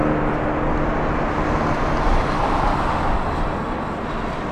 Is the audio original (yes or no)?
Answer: yes